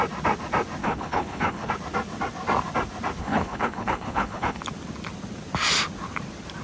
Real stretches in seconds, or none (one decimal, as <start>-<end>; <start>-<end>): 0.0-0.8; 1.7-3.2; 4.6-6.6